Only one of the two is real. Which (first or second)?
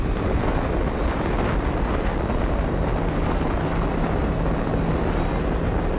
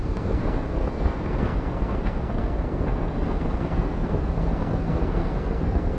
first